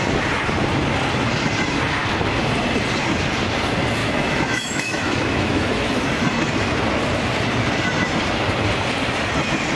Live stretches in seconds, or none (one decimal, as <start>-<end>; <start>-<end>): 0.0-4.0; 5.9-9.8